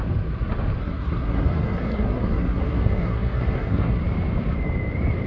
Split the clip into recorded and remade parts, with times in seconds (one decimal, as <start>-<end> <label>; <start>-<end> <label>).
0.0-0.8 recorded; 0.8-4.0 remade; 4.0-5.3 recorded